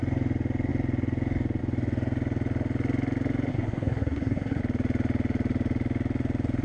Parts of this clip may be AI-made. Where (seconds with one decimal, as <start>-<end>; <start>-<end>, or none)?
3.5-4.6